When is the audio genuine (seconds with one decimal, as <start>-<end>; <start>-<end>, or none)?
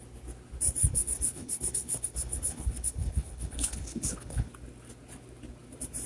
0.0-0.8; 4.5-6.1